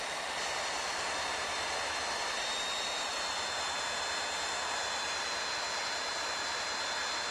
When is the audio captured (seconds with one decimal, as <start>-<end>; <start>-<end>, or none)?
0.0-7.3